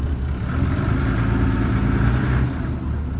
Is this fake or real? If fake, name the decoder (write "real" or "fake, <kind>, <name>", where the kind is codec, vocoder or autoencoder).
real